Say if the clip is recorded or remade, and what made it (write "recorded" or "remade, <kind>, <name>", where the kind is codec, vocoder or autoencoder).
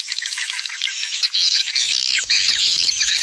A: remade, autoencoder, DAC-VAE